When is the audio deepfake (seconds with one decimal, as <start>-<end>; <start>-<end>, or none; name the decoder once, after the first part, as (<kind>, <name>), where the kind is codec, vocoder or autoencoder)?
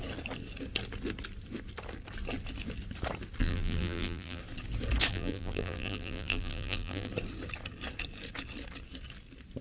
3.4-4.4 (vocoder, BigVGAN v2); 5.1-7.1